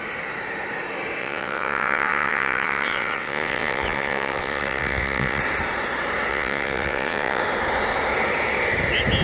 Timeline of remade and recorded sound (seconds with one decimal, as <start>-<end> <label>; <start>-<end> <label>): 0.0-1.2 recorded; 1.2-5.4 remade; 5.4-6.3 recorded; 6.3-7.4 remade; 7.4-9.2 recorded